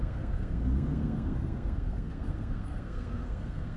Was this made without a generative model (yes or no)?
no